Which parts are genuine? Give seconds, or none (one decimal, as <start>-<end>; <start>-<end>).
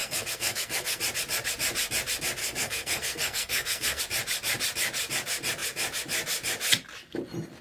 1.0-2.4; 4.0-7.6